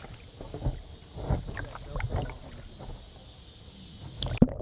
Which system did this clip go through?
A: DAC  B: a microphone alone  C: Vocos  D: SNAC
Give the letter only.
B